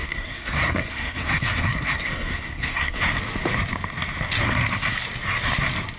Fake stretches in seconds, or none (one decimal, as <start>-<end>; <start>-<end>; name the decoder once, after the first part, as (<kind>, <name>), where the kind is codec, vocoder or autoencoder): 0.0-3.0 (codec, SNAC)

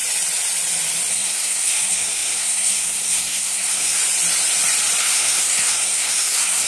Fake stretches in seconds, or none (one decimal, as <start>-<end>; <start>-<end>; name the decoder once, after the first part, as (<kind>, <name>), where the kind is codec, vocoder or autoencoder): 1.1-4.0 (codec, SNAC); 5.0-6.7

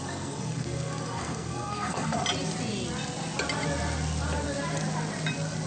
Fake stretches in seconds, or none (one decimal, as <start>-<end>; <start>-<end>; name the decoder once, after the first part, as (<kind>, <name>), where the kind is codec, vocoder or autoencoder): 0.0-2.2 (codec, SNAC)

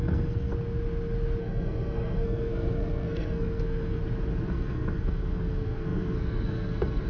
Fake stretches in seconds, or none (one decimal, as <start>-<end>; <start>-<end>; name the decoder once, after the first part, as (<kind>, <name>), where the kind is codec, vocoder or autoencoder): 0.0-0.5 (codec, SNAC); 1.4-4.0; 4.5-7.1

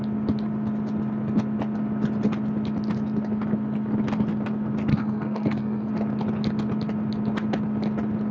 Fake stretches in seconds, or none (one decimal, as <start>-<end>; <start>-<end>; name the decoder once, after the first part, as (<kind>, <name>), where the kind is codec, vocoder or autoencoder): 4.9-5.9 (codec, SNAC)

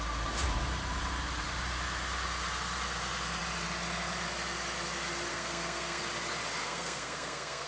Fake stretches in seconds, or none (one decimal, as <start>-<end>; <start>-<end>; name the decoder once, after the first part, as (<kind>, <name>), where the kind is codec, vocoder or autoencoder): 5.3-6.0 (codec, SNAC); 6.6-7.7

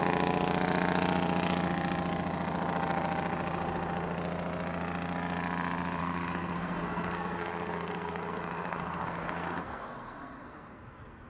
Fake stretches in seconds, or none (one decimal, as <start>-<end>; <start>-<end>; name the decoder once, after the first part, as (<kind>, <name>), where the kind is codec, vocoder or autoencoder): 6.0-11.3 (codec, SNAC)